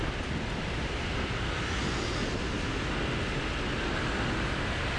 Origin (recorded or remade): recorded